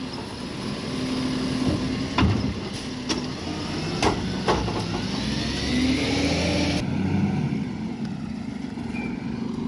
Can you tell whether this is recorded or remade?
recorded